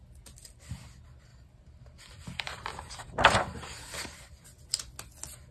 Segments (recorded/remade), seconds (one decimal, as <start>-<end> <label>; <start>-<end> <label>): 0.0-1.3 recorded; 1.3-4.6 remade; 4.6-5.5 recorded

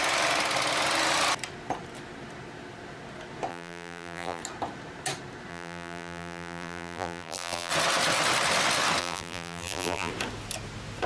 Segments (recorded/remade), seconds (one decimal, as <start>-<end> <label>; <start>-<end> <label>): 0.0-3.5 recorded; 3.5-4.4 remade; 4.4-5.5 recorded; 5.5-7.7 remade; 7.7-9.0 recorded; 9.0-10.1 remade; 10.1-11.1 recorded